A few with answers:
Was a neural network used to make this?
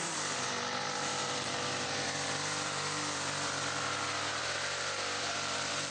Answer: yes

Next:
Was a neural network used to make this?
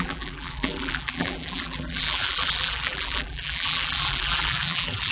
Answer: yes